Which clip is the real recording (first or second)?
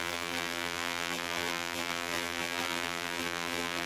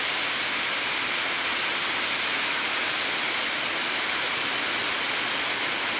second